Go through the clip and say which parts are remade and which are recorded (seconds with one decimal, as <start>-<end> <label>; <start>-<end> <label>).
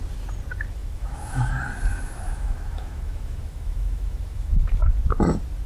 0.0-0.8 recorded; 0.8-1.5 remade; 1.5-1.9 recorded; 1.9-4.5 remade; 4.5-5.7 recorded